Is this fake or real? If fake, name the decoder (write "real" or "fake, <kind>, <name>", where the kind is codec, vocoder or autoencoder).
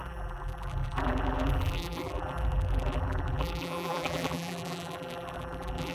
fake, vocoder, BigVGAN v2